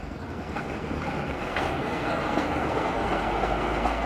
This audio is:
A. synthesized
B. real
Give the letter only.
A